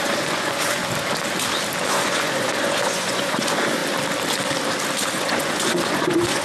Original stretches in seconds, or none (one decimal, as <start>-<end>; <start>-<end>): 0.8-1.9; 3.8-5.2